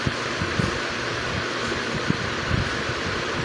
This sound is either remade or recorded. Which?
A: recorded